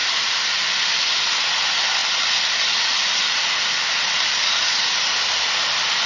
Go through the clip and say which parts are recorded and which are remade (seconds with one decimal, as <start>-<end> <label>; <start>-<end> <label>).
0.0-6.1 recorded